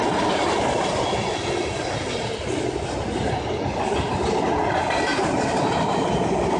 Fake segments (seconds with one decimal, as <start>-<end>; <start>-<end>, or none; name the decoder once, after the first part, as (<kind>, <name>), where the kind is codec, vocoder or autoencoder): none